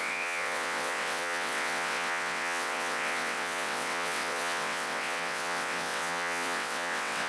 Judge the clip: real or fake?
fake